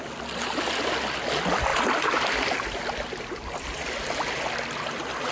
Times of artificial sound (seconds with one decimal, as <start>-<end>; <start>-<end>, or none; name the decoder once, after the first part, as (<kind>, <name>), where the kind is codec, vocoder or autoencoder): none